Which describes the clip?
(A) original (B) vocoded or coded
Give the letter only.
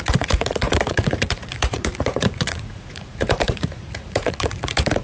B